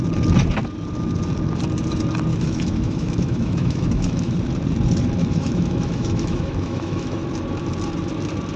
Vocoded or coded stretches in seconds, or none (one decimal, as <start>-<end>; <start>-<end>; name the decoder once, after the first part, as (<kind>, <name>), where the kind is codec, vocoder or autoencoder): 2.3-4.4 (autoencoder, DAC-VAE); 5.2-7.2